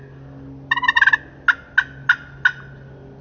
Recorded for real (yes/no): yes